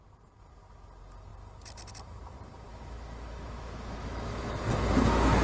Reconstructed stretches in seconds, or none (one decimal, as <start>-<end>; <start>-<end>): 2.7-4.6